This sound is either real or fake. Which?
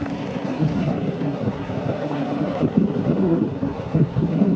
fake